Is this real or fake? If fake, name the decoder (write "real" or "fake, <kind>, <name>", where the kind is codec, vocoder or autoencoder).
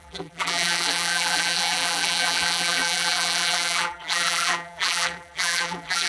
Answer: fake, vocoder, BigVGAN v2